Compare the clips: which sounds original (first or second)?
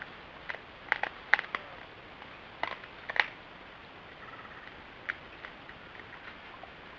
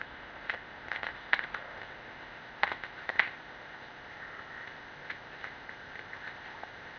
first